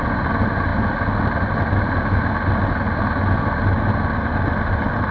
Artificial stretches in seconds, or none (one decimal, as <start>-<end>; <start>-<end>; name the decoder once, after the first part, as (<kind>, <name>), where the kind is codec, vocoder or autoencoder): none

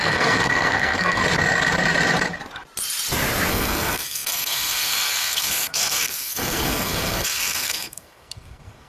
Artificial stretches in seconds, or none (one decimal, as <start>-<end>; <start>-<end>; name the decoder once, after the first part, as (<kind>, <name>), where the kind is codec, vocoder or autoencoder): 0.0-1.2 (codec, SNAC); 3.5-8.9